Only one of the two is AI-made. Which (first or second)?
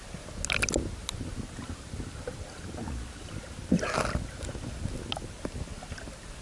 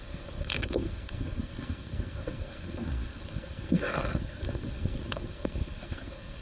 second